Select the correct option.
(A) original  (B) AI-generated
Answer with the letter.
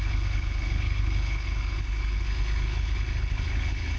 B